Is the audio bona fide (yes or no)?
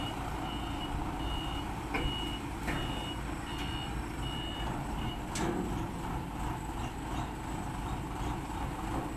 yes